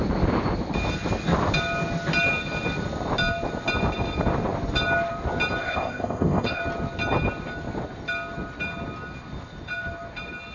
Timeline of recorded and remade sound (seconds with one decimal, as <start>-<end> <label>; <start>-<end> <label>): 0.0-5.6 recorded; 5.6-6.6 remade; 6.6-10.5 recorded